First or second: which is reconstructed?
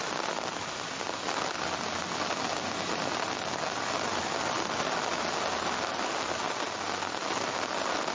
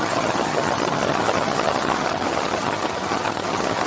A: second